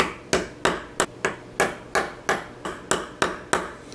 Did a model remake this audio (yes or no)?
no